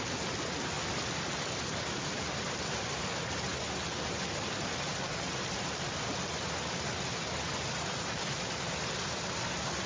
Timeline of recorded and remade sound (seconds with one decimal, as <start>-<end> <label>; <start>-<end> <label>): 0.0-9.9 recorded